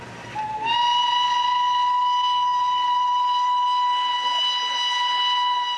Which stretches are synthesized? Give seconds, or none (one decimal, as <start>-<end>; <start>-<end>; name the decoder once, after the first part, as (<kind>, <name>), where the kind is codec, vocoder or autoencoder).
none

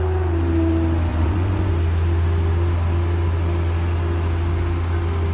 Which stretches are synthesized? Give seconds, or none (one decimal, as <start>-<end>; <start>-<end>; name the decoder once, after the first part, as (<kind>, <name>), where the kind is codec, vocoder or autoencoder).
1.1-1.7 (vocoder, Vocos)

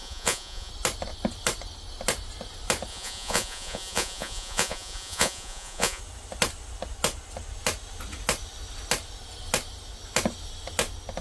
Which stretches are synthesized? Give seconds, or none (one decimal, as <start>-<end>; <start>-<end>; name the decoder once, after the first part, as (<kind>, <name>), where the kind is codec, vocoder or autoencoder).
0.0-0.7 (vocoder, Vocos); 2.9-6.0

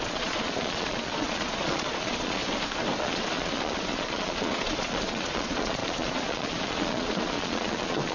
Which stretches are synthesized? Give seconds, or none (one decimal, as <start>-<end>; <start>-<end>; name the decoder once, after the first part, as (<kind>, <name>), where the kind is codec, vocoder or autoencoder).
0.0-2.4 (vocoder, Vocos); 3.0-8.1

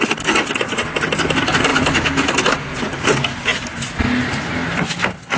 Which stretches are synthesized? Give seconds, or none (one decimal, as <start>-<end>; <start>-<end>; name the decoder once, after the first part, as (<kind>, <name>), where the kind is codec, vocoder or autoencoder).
none